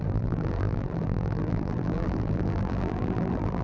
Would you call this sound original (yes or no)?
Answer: no